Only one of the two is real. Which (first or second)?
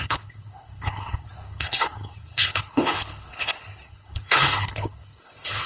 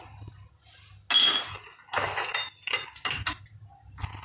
second